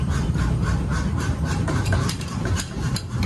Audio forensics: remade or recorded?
remade